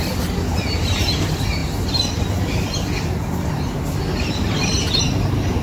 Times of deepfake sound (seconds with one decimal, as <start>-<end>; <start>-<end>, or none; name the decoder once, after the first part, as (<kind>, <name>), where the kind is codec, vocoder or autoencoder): none

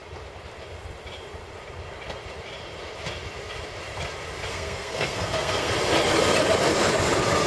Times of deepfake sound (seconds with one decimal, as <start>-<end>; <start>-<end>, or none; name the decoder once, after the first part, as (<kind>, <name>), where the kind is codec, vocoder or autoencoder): 4.5-5.7 (codec, SNAC)